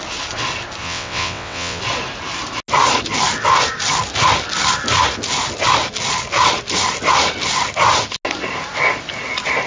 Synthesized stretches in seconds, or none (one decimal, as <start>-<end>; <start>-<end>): 0.8-1.8